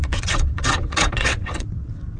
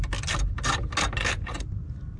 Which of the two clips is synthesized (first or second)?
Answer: first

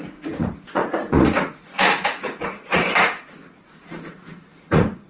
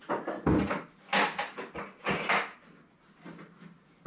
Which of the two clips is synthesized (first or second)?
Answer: first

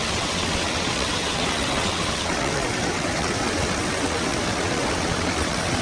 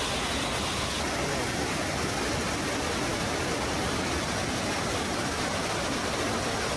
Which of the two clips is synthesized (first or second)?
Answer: first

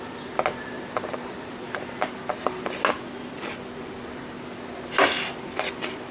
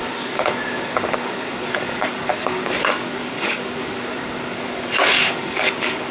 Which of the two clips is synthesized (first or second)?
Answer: second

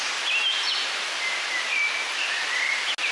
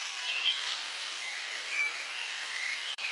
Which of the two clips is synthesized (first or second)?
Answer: second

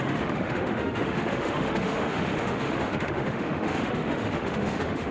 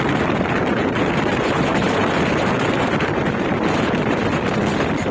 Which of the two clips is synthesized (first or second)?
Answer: first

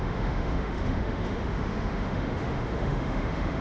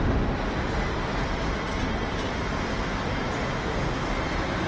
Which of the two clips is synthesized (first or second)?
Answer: first